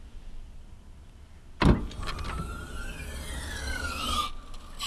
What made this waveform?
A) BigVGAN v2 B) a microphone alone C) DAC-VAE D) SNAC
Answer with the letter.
B